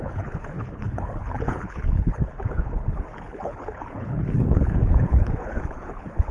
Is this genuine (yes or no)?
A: no